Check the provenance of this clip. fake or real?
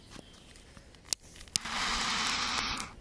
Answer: real